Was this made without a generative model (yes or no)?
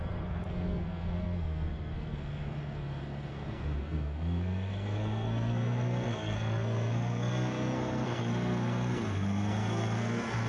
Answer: no